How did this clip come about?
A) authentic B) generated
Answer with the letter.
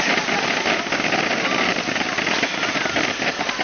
A